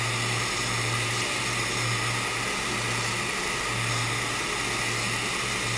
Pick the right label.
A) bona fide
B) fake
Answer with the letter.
A